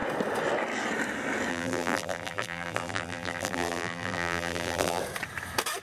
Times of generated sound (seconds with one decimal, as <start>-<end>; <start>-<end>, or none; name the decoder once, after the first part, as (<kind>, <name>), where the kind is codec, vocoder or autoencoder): 1.5-5.0 (vocoder, BigVGAN v2)